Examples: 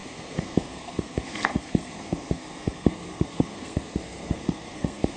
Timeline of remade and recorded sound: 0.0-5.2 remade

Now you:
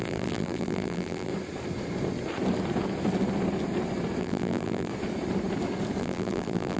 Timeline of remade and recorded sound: 0.0-1.3 remade; 1.3-4.2 recorded; 4.2-4.9 remade; 4.9-6.0 recorded; 6.0-6.8 remade

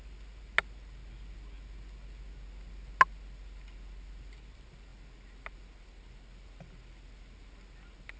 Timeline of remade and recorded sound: 0.0-8.2 recorded

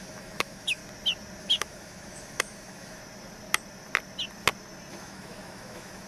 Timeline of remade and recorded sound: 0.0-0.8 remade; 0.8-1.4 recorded; 1.4-3.0 remade; 3.0-4.9 recorded; 4.9-6.1 remade

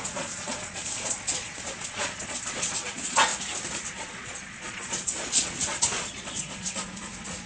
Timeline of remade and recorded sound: 0.0-3.3 remade; 3.3-3.9 recorded; 3.9-7.5 remade